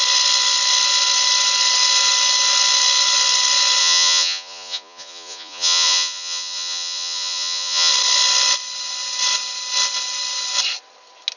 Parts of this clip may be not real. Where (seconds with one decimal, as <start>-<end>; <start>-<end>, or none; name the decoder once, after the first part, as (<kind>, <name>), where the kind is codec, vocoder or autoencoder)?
3.8-7.9 (vocoder, Vocos)